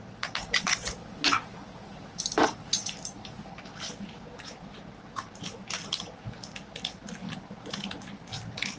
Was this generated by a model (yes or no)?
no